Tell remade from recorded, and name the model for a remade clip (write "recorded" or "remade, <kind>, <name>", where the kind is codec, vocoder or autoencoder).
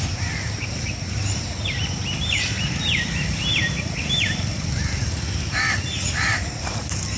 remade, vocoder, BigVGAN v2